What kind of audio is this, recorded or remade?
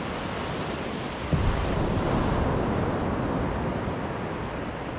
recorded